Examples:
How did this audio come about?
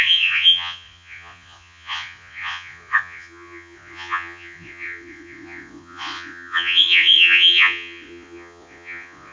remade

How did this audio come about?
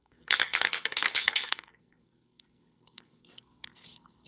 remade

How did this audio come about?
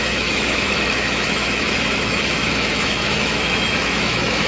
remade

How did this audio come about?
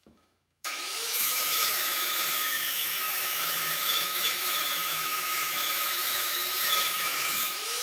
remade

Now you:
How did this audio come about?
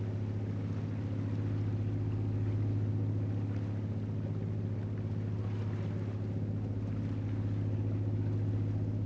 recorded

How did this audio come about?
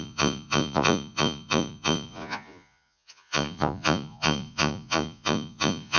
remade